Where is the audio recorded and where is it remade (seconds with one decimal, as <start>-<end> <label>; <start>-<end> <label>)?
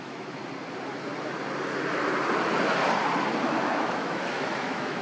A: 0.0-0.4 remade; 0.4-3.4 recorded; 3.4-5.0 remade